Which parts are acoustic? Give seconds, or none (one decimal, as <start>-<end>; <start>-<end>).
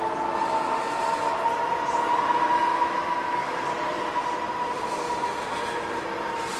0.0-2.7; 3.6-6.6